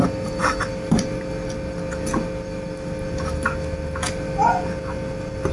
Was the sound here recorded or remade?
recorded